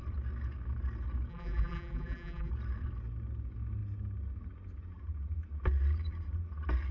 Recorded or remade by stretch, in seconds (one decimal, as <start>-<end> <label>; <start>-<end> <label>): 0.0-1.3 recorded; 1.3-2.5 remade; 2.5-6.9 recorded